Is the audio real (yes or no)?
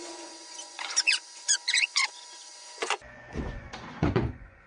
no